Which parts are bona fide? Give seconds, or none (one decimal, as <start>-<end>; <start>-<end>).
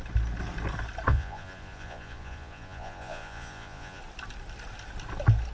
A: 0.0-1.1; 4.0-5.5